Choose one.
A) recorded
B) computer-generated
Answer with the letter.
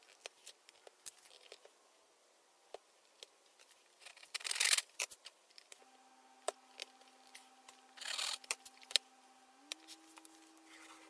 A